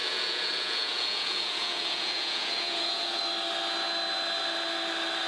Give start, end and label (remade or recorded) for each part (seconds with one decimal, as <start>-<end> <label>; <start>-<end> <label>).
0.0-3.2 remade; 3.2-5.3 recorded